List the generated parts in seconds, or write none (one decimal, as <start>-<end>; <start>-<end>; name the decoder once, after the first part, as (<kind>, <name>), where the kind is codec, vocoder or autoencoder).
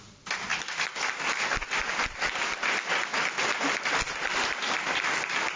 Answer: none